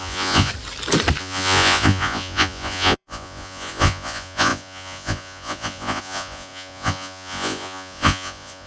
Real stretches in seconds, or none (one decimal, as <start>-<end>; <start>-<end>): 0.5-1.2